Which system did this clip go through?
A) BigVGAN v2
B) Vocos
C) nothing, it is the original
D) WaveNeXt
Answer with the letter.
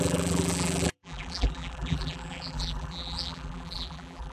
A